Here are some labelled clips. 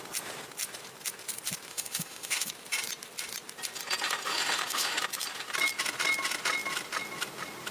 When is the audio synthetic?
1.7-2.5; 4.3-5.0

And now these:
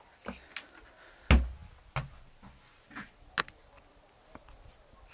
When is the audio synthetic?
none

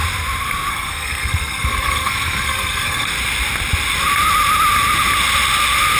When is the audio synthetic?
0.7-3.1

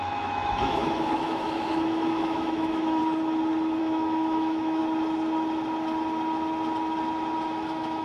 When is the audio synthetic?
0.0-3.0; 3.8-4.8; 7.5-8.0

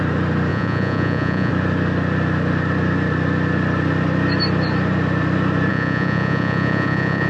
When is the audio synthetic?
0.5-1.5; 5.7-7.3